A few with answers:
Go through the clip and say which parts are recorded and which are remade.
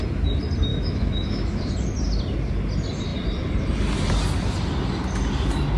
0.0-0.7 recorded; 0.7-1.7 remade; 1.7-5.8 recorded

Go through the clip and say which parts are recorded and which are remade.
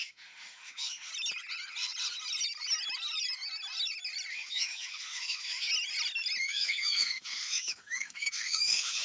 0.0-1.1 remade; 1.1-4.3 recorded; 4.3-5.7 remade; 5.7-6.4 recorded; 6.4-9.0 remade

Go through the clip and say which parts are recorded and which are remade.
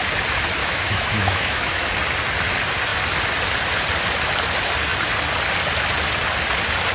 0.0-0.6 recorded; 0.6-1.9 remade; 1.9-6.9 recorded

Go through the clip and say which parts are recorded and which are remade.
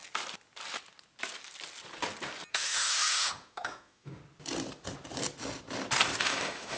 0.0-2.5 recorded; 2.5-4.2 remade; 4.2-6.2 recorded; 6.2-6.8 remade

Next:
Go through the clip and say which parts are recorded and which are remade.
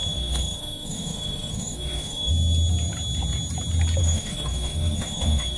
0.0-2.3 remade; 2.3-4.0 recorded; 4.0-5.6 remade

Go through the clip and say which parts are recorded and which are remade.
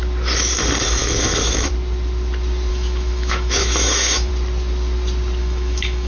0.0-1.0 recorded; 1.0-1.7 remade; 1.7-2.7 recorded; 2.7-4.3 remade; 4.3-5.4 recorded; 5.4-6.1 remade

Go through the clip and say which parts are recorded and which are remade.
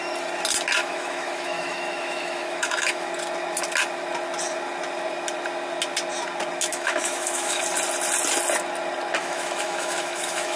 0.0-0.8 recorded; 0.8-3.1 remade; 3.1-6.7 recorded; 6.7-7.6 remade; 7.6-9.2 recorded; 9.2-10.6 remade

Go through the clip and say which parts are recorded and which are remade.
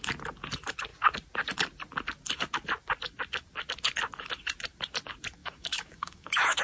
0.0-5.4 recorded; 5.4-6.6 remade